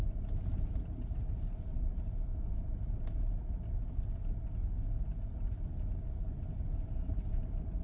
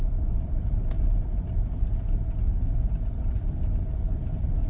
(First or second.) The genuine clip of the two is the first